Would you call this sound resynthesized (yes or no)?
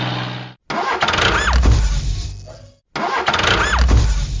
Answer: no